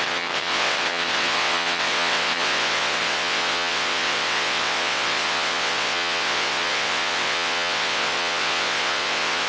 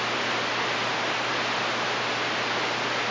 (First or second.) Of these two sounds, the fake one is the first